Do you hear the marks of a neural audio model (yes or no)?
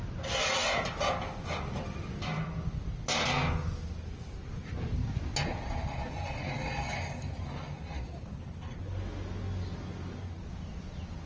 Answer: no